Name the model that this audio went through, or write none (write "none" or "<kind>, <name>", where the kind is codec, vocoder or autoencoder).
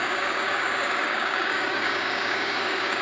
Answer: codec, DAC